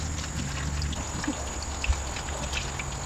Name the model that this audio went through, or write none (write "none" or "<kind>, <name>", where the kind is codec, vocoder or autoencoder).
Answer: none